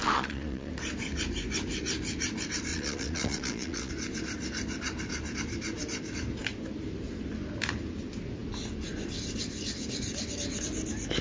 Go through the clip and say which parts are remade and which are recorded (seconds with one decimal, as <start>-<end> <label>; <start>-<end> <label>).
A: 0.0-0.7 remade; 0.7-2.7 recorded; 2.7-3.9 remade; 3.9-11.2 recorded